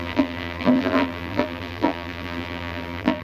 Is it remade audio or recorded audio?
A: remade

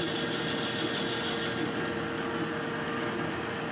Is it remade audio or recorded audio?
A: recorded